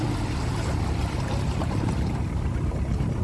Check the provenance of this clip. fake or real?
real